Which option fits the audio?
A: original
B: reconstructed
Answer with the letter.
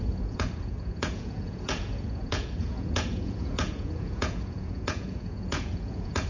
B